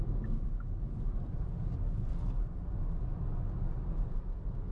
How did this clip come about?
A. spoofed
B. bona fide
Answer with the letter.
B